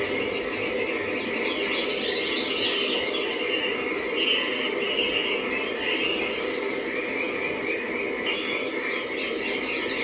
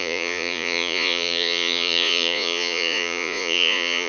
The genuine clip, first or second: first